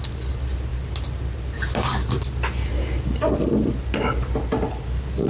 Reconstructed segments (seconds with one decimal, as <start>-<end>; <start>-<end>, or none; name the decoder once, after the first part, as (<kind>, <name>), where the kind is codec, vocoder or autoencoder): none